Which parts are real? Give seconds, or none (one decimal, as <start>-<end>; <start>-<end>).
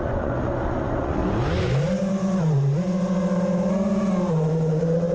1.2-4.3